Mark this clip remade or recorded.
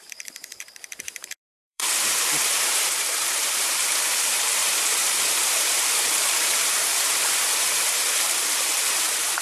remade